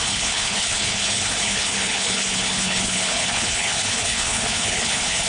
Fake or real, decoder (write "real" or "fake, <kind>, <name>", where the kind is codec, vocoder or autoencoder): fake, codec, HILCodec